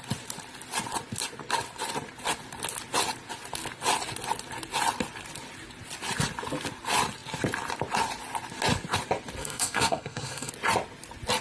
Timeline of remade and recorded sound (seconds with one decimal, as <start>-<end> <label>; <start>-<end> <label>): 0.0-9.4 recorded; 9.4-10.5 remade; 10.5-11.4 recorded